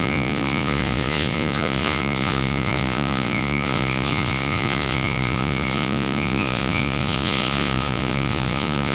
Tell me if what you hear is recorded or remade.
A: remade